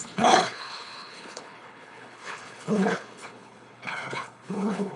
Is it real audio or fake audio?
fake